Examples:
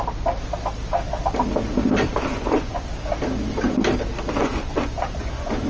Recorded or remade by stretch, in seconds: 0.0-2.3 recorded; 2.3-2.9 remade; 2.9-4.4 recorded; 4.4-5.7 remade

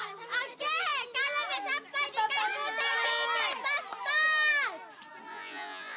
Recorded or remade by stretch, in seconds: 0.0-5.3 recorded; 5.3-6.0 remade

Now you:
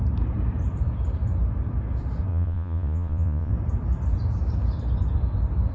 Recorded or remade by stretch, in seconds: 0.0-2.3 recorded; 2.3-3.5 remade; 3.5-5.7 recorded